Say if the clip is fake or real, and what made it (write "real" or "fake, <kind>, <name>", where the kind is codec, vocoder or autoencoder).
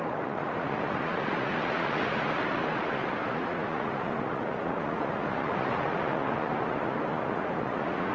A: fake, vocoder, Vocos